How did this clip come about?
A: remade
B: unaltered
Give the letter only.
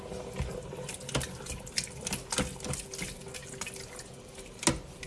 B